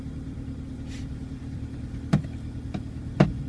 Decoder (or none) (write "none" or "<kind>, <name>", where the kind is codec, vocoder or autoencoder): vocoder, BigVGAN v2